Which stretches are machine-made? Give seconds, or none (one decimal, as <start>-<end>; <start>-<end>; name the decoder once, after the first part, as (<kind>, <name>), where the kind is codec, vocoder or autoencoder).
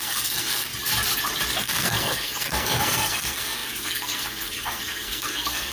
0.0-0.7 (codec, SNAC); 1.5-5.7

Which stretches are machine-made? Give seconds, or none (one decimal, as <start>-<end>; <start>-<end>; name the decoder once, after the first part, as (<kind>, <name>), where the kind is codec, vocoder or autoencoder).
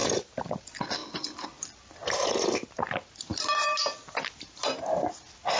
0.0-0.5 (vocoder, BigVGAN v2); 2.0-5.1